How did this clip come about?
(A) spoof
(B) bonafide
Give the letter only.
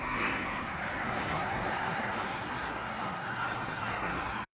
A